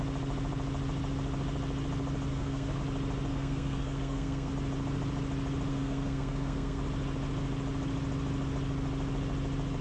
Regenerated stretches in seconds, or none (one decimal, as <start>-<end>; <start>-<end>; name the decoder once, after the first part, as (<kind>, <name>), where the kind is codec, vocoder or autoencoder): 2.3-2.8 (codec, SNAC); 3.3-4.5; 5.7-6.8